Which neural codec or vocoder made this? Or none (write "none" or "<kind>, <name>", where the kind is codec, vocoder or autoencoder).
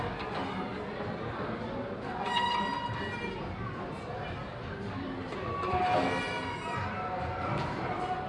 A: none